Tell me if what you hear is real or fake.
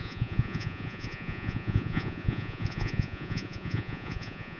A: fake